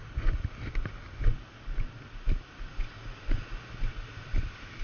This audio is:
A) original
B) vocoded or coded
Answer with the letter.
A